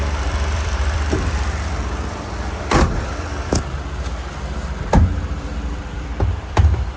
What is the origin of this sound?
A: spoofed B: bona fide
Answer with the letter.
A